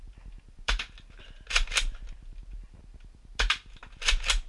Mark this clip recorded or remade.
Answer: recorded